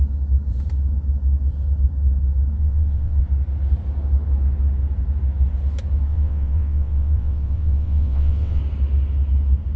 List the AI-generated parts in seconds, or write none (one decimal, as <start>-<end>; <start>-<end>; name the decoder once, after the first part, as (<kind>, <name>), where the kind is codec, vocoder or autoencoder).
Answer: 2.6-3.2 (vocoder, WaveNeXt); 6.1-8.6